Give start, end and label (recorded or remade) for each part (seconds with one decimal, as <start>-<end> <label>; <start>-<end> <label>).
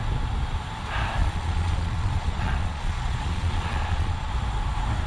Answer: 0.0-1.2 recorded; 1.2-4.3 remade; 4.3-5.1 recorded